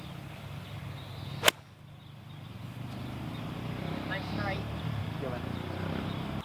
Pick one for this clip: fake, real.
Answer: real